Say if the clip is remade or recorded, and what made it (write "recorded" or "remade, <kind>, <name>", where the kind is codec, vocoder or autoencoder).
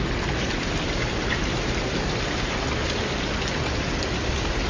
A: recorded